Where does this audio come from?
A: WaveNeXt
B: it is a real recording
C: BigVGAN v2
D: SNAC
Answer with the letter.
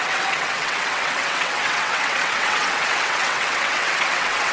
A